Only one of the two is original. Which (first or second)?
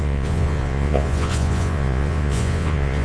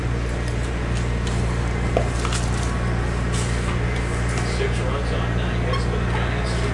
second